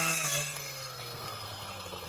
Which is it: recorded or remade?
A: remade